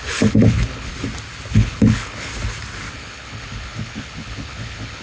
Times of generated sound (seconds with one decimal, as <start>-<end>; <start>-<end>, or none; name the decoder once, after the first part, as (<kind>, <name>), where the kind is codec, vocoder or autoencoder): 0.0-0.9 (codec, HILCodec); 1.5-2.3; 2.9-5.0